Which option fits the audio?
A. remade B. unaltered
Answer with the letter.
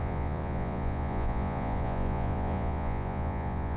A